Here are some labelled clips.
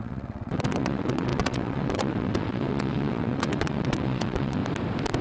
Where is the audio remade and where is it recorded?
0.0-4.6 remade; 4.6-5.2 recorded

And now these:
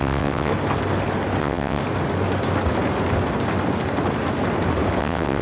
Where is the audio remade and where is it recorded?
0.0-0.5 remade; 0.5-1.4 recorded; 1.4-1.8 remade; 1.8-5.0 recorded; 5.0-5.4 remade

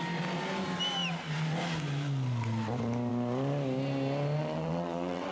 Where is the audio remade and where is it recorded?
0.0-4.4 recorded; 4.4-5.3 remade

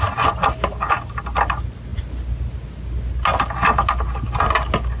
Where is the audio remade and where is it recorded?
0.0-5.0 recorded

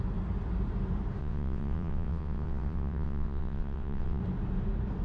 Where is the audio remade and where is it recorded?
0.0-1.2 recorded; 1.2-4.2 remade; 4.2-5.0 recorded

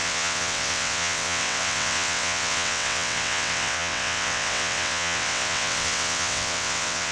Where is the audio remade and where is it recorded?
0.0-7.1 remade